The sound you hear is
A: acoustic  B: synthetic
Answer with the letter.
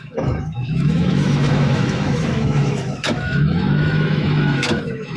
B